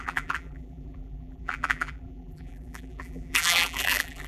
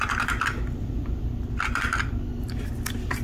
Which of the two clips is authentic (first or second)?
second